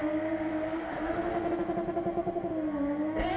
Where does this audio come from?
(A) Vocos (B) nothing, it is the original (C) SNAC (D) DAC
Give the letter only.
B